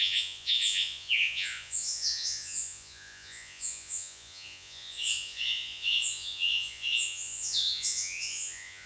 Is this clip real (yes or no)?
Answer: no